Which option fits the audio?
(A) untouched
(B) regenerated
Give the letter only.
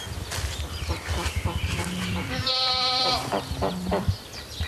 B